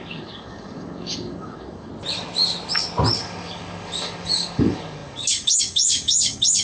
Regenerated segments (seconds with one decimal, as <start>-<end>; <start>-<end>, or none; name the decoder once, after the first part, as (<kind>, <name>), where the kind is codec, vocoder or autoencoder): 0.0-1.9 (codec, DAC); 3.2-6.6

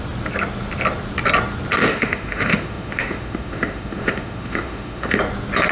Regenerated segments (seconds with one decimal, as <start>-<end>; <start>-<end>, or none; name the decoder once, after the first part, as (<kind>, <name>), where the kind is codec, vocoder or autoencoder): 1.8-5.2 (autoencoder, DAC-VAE)

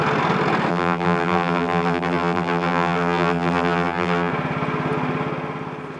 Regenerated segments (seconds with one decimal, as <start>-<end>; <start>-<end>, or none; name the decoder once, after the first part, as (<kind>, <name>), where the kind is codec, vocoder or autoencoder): 0.7-4.3 (vocoder, BigVGAN v2)

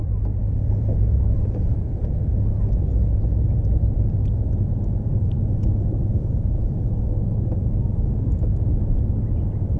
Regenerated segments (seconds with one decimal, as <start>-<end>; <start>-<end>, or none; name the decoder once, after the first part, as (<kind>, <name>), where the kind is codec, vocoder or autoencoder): 0.0-2.9 (vocoder, BigVGAN v2); 5.0-9.8

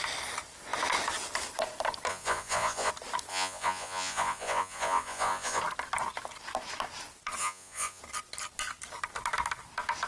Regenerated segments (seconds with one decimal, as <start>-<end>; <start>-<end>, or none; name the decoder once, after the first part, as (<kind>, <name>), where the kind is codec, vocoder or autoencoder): 2.1-2.9 (vocoder, Vocos); 3.3-5.6; 7.4-8.0

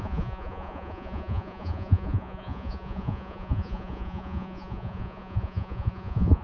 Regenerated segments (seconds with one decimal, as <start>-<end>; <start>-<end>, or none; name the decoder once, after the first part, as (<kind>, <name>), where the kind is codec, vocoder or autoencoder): 0.0-6.4 (vocoder, Vocos)